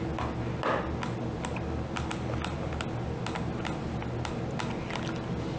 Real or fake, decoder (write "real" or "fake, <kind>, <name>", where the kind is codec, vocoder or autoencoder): real